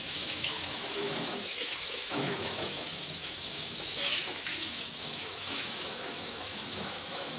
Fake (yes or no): yes